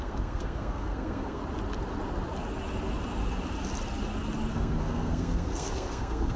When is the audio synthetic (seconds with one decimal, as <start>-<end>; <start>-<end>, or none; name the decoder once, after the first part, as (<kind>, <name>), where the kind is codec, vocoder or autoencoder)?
0.0-1.4 (codec, SNAC); 4.5-6.4